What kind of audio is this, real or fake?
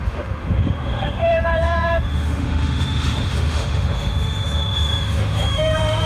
fake